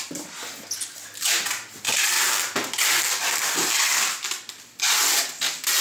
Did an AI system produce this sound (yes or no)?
no